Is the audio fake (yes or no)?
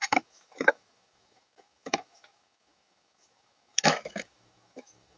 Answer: yes